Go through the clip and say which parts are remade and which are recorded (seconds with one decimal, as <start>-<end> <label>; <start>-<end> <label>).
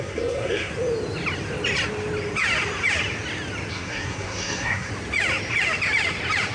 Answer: 0.0-0.7 remade; 0.7-3.7 recorded; 3.7-4.9 remade; 4.9-6.5 recorded